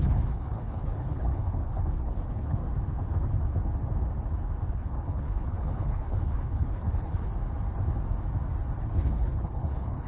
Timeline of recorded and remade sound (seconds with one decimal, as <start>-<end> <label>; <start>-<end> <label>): 0.0-2.6 remade; 2.6-4.7 recorded; 4.7-7.3 remade; 7.3-8.8 recorded; 8.8-10.1 remade